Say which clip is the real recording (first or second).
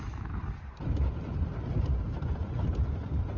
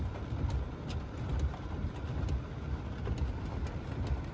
second